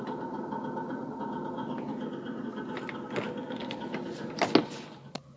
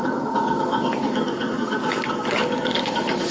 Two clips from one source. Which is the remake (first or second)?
second